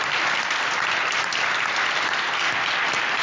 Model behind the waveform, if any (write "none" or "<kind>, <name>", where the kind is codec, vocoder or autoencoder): vocoder, BigVGAN v2